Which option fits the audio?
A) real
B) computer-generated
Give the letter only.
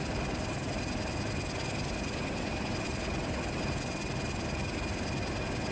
A